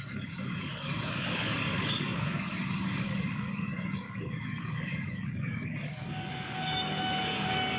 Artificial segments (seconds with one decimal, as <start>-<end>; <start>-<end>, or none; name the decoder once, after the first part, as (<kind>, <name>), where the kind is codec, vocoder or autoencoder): 0.0-7.8 (codec, DAC)